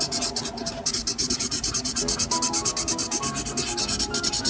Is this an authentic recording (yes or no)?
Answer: yes